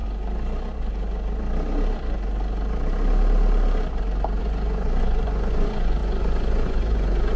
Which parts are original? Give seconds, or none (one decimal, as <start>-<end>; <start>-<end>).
0.0-4.4